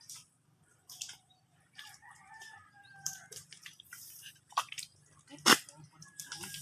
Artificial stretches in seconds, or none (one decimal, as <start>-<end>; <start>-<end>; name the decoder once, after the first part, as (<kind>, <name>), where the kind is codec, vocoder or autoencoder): 0.7-4.7 (vocoder, BigVGAN v2)